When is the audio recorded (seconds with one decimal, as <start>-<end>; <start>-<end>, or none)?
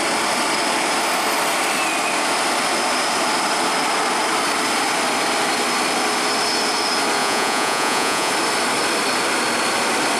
0.0-7.2; 8.3-10.2